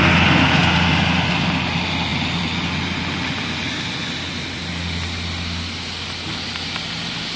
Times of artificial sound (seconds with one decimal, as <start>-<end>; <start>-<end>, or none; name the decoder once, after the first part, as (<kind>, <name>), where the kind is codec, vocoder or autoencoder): none